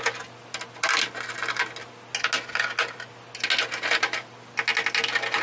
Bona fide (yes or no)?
yes